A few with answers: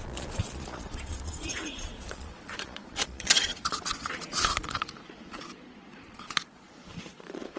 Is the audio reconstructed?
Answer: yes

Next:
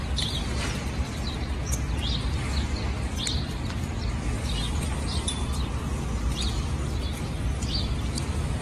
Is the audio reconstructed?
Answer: no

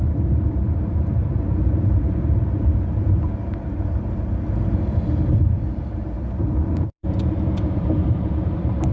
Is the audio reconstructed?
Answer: yes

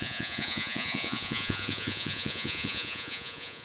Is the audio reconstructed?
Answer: yes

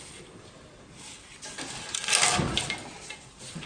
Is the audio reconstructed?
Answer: no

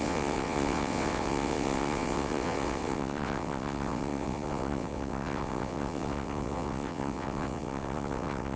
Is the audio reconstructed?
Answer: yes